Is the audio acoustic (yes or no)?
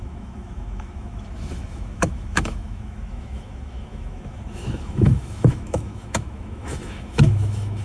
no